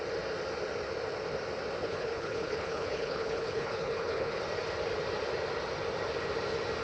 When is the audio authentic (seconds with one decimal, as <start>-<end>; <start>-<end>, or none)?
0.0-1.8; 4.4-6.8